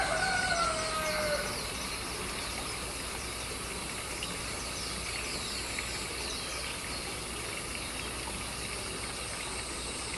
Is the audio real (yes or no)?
yes